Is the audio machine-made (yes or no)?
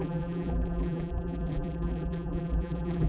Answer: yes